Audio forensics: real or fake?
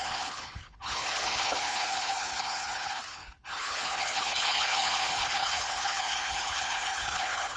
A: fake